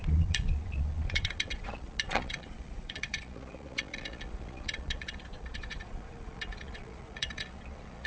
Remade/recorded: remade